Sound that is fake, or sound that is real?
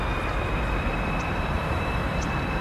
real